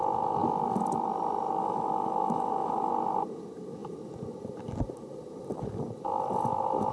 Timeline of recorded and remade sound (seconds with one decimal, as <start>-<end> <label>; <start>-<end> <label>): 0.0-1.6 recorded; 1.6-2.9 remade; 2.9-6.9 recorded